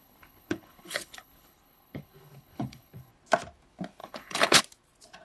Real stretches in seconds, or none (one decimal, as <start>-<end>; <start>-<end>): 3.1-4.0; 4.6-5.2